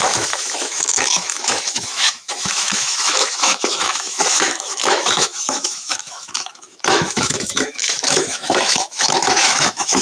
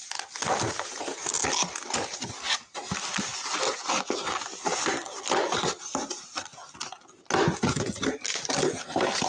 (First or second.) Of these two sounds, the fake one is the first